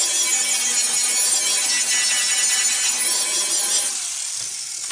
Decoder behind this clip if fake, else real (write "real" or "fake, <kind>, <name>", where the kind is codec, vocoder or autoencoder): real